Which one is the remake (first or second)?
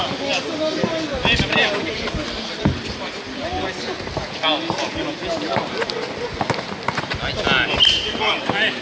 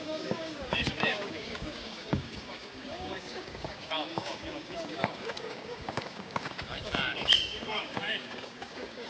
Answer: second